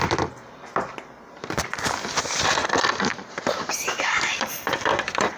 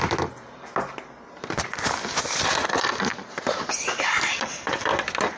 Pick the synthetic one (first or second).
first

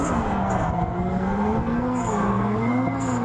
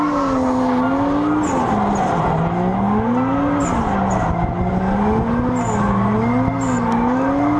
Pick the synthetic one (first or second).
first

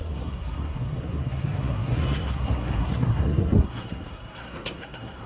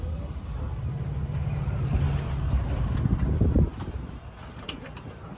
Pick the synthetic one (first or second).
first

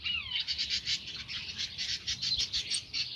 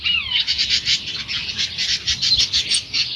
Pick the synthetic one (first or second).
first